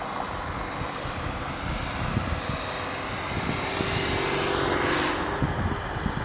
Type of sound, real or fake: real